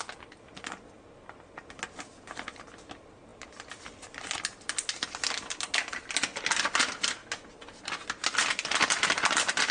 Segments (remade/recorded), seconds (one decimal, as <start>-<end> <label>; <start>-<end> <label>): 0.0-9.7 recorded